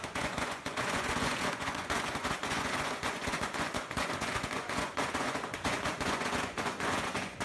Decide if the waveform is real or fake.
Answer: fake